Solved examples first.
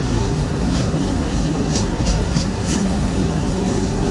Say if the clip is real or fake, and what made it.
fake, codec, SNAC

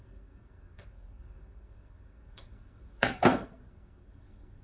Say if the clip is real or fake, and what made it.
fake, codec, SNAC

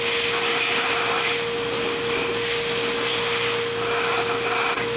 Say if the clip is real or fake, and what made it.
real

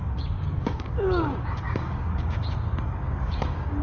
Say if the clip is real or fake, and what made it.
fake, codec, DAC